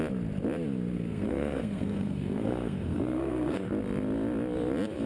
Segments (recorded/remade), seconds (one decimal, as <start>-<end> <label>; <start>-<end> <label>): 0.0-0.9 recorded; 0.9-3.7 remade; 3.7-5.1 recorded

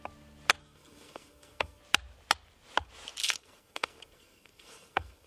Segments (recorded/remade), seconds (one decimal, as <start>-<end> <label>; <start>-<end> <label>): 0.0-0.6 recorded; 0.6-1.8 remade; 1.8-3.2 recorded; 3.2-5.3 remade

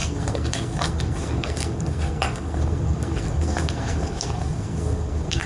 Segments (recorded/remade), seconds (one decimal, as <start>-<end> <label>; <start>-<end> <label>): 0.0-5.5 remade

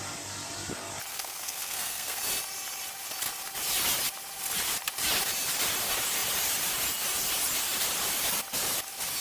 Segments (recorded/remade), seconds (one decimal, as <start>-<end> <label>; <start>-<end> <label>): 0.0-1.1 recorded; 1.1-2.2 remade; 2.2-9.2 recorded